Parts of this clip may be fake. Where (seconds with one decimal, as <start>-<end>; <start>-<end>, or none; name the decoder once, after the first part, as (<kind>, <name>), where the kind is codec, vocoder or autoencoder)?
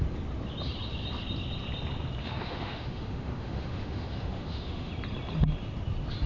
2.2-4.9 (autoencoder, DAC-VAE)